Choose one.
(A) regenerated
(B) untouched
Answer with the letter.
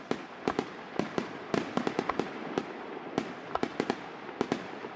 B